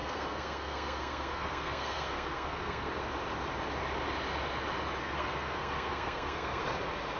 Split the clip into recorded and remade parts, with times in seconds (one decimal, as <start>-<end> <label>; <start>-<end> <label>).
0.0-3.0 remade; 3.0-5.0 recorded; 5.0-6.6 remade; 6.6-7.2 recorded